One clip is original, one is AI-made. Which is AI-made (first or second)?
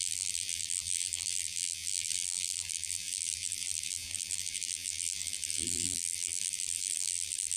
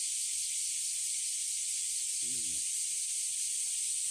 first